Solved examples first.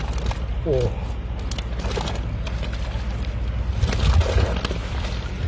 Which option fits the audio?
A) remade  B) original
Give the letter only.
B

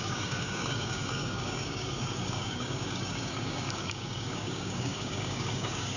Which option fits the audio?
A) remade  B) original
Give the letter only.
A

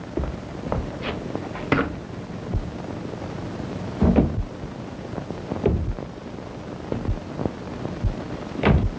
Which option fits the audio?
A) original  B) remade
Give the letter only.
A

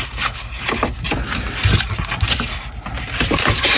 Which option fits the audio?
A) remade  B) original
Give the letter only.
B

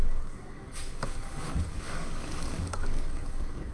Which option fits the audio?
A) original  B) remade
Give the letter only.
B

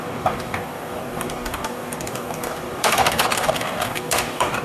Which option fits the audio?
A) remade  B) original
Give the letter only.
A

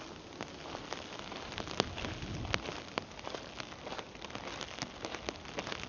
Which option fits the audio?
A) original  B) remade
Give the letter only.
A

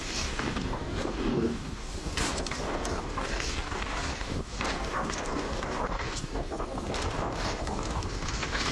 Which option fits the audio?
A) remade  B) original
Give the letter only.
A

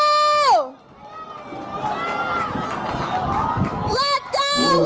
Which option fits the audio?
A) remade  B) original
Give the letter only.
B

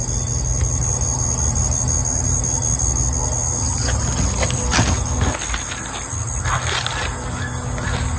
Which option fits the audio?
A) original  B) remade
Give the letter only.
A